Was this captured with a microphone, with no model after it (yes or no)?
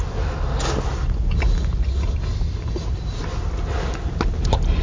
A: yes